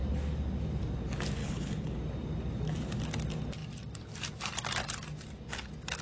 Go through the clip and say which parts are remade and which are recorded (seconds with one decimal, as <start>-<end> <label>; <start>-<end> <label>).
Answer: 0.0-1.4 recorded; 1.4-2.0 remade; 2.0-6.0 recorded